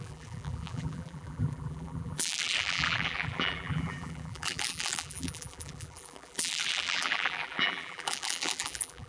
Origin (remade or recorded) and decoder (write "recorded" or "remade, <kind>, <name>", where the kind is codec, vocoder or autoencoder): remade, vocoder, BigVGAN v2